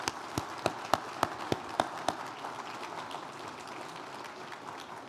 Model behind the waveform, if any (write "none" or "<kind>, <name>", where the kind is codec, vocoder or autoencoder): none